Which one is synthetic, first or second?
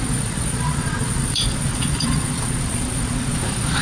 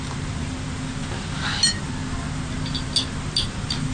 first